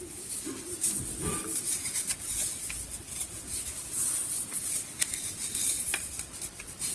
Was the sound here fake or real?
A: real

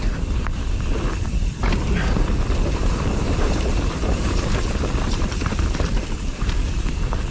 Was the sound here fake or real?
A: fake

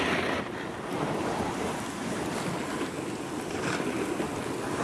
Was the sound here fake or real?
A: real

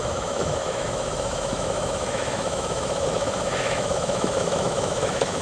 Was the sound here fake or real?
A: fake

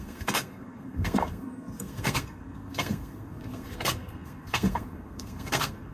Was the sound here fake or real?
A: fake